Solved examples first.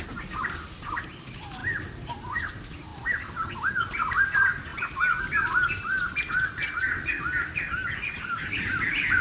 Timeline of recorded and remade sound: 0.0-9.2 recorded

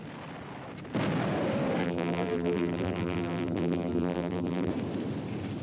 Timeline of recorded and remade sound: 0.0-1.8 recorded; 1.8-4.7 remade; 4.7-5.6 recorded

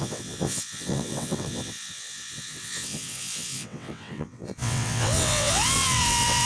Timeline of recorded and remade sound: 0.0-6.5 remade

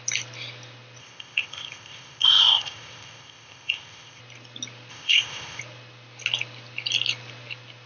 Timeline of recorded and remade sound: 0.0-1.0 recorded; 1.0-4.2 remade; 4.2-4.9 recorded; 4.9-5.6 remade; 5.6-7.9 recorded